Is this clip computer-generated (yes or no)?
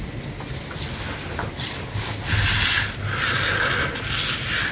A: no